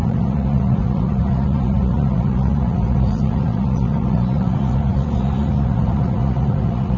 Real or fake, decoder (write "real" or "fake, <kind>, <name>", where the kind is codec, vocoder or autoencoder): fake, vocoder, Vocos